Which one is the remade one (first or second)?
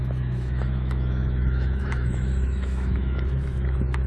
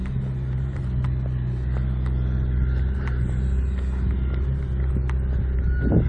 first